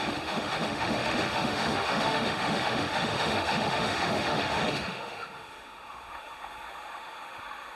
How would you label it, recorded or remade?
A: remade